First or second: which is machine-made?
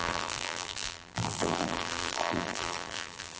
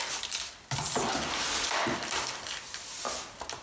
first